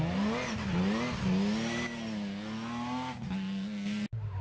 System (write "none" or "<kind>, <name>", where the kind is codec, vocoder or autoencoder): none